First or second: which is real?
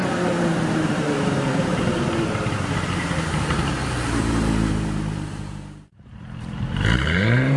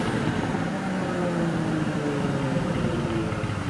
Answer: second